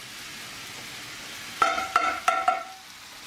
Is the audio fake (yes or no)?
no